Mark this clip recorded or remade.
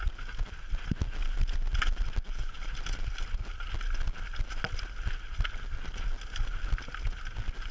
recorded